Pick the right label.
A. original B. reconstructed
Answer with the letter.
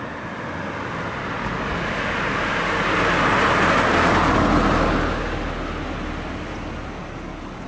A